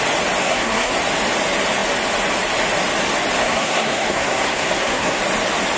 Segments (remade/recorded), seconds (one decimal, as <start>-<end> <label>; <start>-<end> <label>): 0.0-0.4 recorded; 0.4-0.9 remade; 0.9-3.4 recorded; 3.4-5.2 remade; 5.2-5.8 recorded